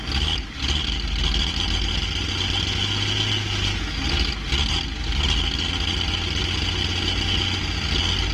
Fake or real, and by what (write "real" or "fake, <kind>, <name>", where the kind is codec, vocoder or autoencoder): real